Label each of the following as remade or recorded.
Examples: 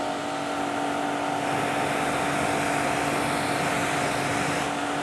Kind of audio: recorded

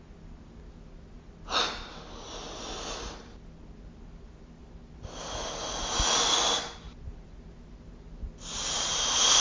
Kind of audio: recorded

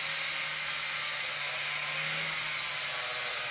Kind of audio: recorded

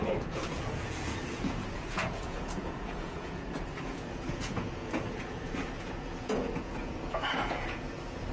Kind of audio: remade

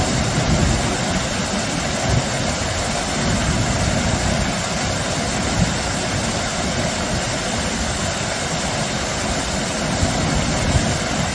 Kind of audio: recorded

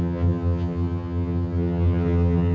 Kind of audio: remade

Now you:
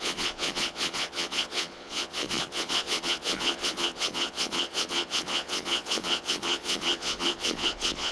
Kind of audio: remade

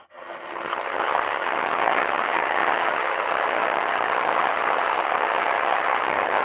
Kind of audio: remade